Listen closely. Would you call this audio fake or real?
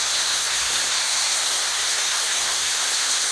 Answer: fake